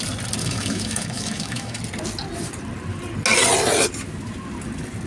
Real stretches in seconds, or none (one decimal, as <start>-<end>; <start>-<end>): 0.0-0.4; 1.8-5.1